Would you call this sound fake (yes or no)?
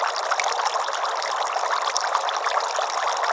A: no